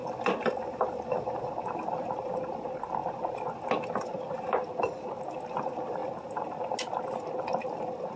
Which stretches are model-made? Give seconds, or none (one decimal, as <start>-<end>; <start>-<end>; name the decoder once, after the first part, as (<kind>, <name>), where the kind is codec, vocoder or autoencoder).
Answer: none